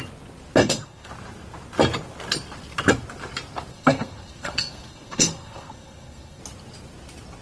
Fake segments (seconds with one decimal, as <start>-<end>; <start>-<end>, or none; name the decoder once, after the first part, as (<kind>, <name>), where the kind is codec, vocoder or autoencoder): 0.6-1.1 (codec, SNAC); 3.7-6.4